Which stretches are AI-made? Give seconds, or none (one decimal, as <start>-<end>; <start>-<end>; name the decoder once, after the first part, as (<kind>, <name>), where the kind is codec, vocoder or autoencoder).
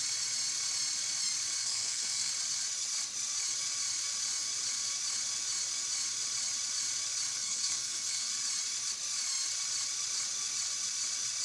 1.6-2.3 (codec, SNAC); 7.3-8.3